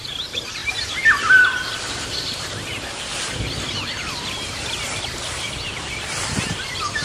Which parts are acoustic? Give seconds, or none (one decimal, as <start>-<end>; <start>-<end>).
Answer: 0.6-1.8